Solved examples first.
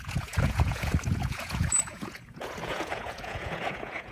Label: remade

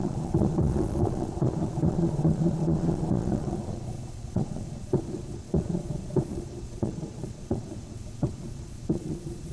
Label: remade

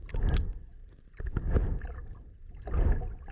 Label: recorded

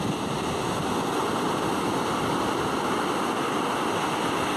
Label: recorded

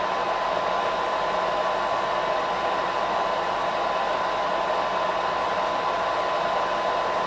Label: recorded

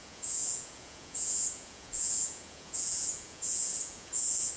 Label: remade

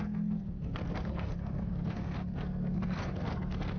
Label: remade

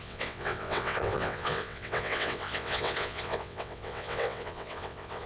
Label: remade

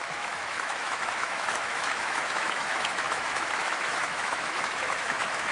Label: remade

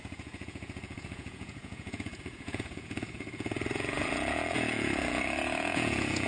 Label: remade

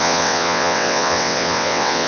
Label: remade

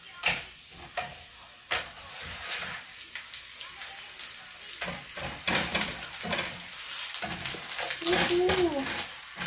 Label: recorded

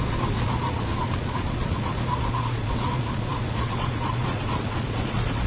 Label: remade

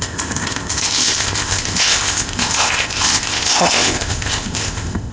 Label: remade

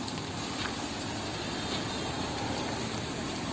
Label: recorded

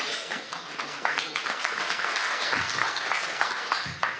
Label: remade